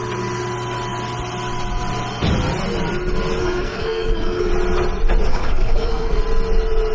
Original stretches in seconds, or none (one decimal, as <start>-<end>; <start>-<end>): 0.0-3.4; 4.5-5.3; 6.2-6.9